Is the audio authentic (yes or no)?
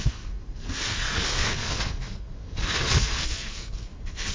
no